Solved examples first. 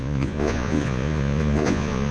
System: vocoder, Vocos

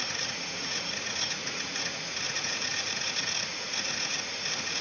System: vocoder, Vocos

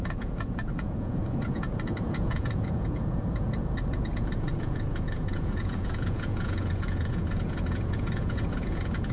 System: vocoder, Vocos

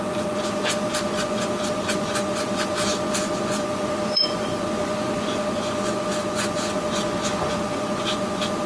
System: vocoder, Vocos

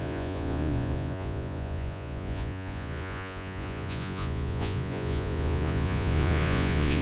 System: vocoder, Vocos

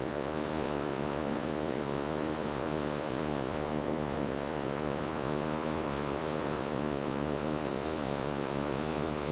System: vocoder, Vocos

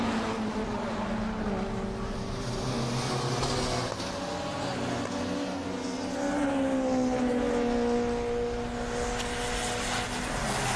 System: none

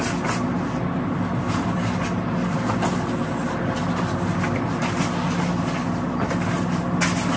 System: none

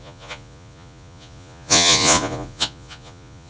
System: vocoder, Vocos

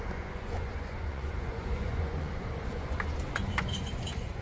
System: vocoder, Vocos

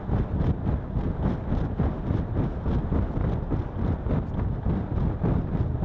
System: none